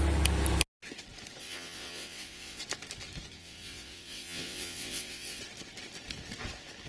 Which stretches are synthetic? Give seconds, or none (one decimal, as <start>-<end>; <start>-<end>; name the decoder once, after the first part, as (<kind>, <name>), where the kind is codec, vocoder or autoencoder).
1.4-2.6 (vocoder, WaveNeXt); 3.4-5.4